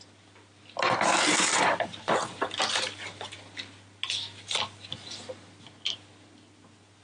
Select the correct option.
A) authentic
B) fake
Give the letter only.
A